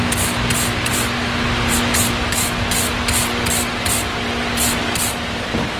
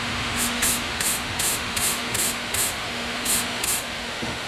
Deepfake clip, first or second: second